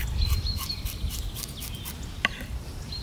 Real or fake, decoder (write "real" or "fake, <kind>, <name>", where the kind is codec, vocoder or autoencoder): real